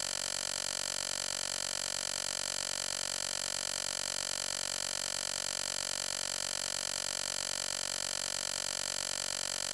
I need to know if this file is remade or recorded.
recorded